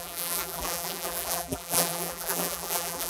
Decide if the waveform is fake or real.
fake